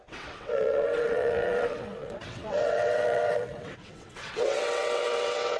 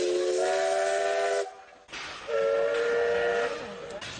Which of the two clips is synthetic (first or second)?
first